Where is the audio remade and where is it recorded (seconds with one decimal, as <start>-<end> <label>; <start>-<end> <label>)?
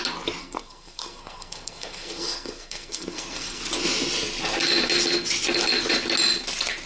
0.0-0.4 recorded; 0.4-3.6 remade; 3.6-6.9 recorded